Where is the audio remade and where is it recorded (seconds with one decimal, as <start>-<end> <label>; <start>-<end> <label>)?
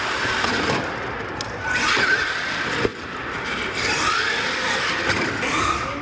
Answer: 0.0-6.0 recorded